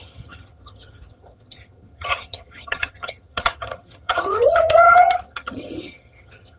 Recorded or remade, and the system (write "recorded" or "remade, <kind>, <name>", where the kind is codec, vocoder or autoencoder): remade, vocoder, HiFi-GAN